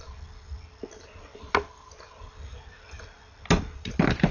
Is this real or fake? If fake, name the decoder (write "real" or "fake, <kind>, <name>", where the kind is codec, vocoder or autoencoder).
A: real